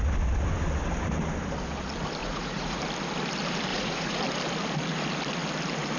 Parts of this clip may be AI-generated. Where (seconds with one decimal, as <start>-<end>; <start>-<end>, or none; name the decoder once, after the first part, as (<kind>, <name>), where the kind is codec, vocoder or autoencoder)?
2.2-2.8 (vocoder, Vocos); 3.7-4.2